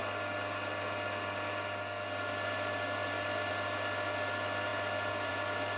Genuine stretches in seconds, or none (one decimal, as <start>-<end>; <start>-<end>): 0.0-5.8